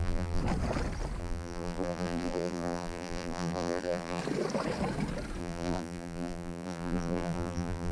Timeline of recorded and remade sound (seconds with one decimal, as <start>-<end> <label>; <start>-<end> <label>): 0.0-0.4 remade; 0.4-1.2 recorded; 1.2-4.2 remade; 4.2-5.4 recorded; 5.4-7.9 remade